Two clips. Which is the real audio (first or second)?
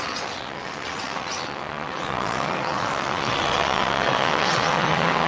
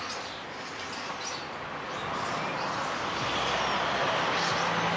second